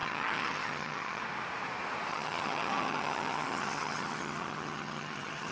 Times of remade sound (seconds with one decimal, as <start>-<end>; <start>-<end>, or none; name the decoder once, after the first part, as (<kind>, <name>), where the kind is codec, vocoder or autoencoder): 0.0-1.2 (vocoder, HiFi-GAN); 2.1-5.5